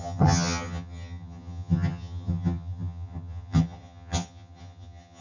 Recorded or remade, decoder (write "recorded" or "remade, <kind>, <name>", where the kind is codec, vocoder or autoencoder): remade, vocoder, HiFi-GAN